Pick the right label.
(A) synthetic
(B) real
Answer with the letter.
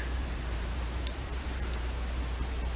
A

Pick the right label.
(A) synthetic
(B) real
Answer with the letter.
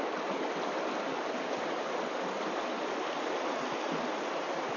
B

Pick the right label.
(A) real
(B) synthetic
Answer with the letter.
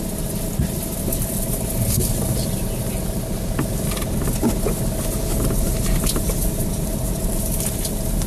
A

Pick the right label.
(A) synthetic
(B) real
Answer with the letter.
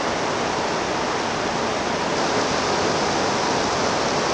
B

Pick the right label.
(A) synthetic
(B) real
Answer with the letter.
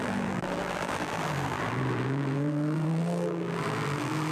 A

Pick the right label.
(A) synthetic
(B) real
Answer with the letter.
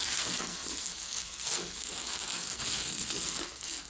A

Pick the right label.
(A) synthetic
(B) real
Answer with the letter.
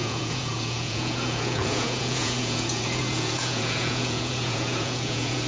A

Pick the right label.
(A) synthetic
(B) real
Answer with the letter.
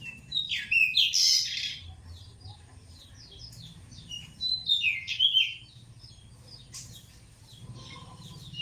B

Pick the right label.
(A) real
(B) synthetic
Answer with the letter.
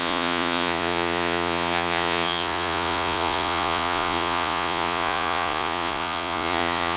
B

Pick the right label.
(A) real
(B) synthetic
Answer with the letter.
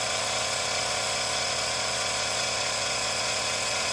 B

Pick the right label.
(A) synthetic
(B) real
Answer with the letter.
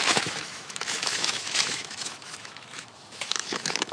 A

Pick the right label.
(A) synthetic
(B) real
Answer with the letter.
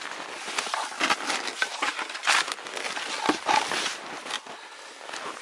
B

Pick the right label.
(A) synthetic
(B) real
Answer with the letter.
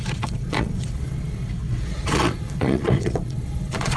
A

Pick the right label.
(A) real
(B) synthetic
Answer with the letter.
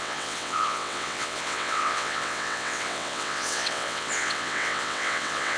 B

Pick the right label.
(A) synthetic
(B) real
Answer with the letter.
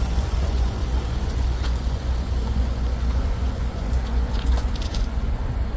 A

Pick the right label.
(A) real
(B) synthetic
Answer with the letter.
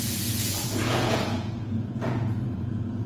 B